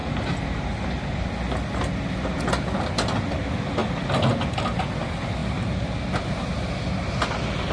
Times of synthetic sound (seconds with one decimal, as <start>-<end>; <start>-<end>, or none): 0.0-0.7; 5.4-6.5